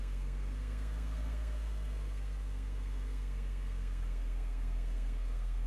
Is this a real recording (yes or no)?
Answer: no